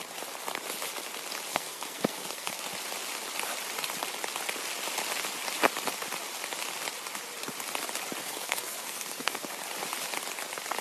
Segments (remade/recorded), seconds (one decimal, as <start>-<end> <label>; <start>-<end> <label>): 0.0-1.5 recorded; 1.5-2.6 remade; 2.6-8.2 recorded; 8.2-9.5 remade; 9.5-10.8 recorded